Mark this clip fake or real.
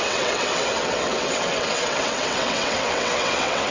fake